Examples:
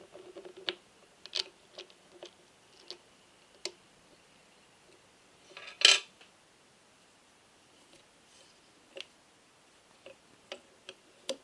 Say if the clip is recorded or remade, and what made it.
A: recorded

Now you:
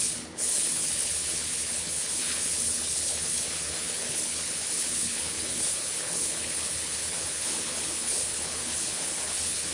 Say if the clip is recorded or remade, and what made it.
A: remade, codec, HILCodec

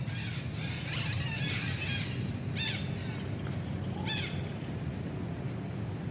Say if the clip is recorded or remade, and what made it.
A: recorded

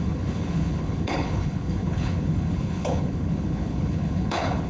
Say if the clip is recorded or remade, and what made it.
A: remade, codec, HILCodec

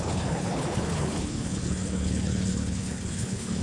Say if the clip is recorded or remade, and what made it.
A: remade, codec, HILCodec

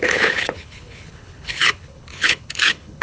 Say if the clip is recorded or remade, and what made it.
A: remade, codec, HILCodec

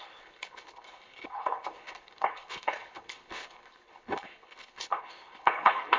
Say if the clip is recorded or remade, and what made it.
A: remade, codec, HILCodec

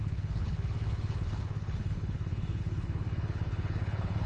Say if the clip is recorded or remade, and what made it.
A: remade, codec, HILCodec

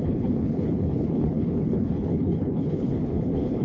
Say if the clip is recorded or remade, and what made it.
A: remade, codec, HILCodec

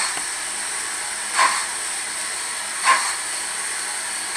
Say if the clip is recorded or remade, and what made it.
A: recorded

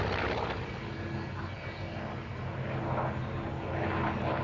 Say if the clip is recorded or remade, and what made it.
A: recorded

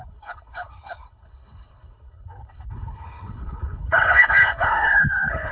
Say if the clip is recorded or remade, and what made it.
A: remade, codec, HILCodec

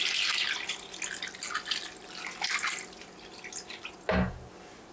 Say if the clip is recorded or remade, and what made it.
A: recorded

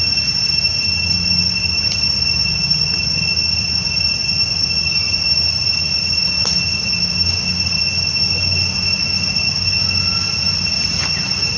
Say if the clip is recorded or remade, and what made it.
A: recorded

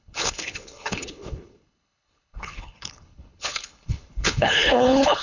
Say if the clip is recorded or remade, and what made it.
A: remade, codec, HILCodec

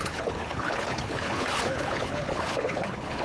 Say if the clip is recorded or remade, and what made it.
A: remade, codec, HILCodec